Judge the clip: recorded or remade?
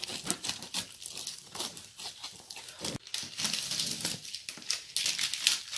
recorded